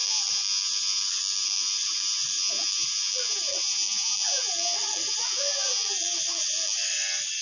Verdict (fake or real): real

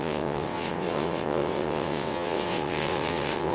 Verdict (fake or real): fake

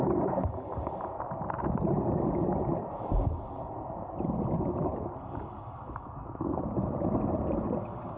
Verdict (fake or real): real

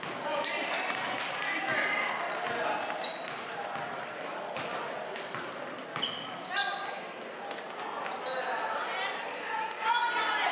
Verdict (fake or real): real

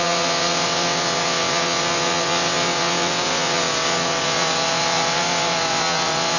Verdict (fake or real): fake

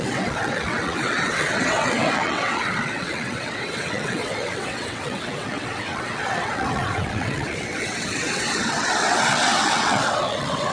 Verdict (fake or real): fake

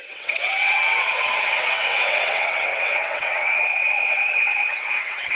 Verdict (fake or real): fake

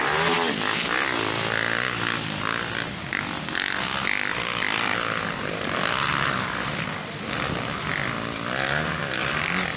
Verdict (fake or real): real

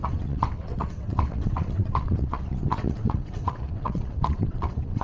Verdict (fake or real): fake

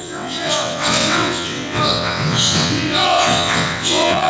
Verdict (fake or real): fake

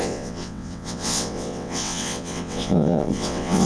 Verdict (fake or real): fake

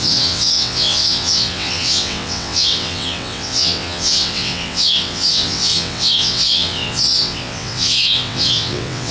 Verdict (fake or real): fake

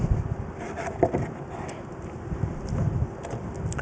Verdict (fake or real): real